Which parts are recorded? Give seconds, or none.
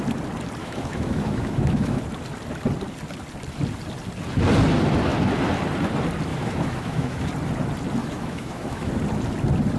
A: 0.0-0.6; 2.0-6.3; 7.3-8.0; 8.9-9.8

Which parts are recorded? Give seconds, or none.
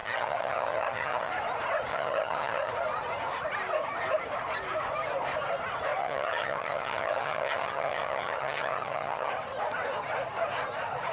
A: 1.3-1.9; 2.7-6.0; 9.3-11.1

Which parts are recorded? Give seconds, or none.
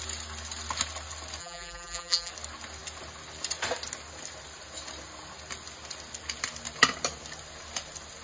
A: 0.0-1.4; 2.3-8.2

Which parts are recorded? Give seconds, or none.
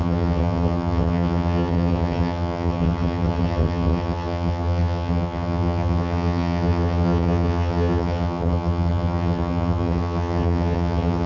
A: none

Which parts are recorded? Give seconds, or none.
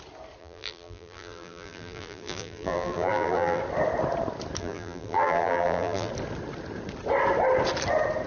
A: 0.0-0.4; 3.6-4.6; 6.1-8.3